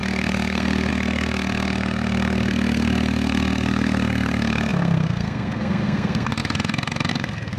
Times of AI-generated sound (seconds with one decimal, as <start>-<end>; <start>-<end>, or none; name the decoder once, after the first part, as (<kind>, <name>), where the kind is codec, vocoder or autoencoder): 0.0-7.6 (codec, SNAC)